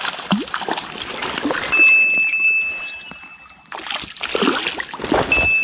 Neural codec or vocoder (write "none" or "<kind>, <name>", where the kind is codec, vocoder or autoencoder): none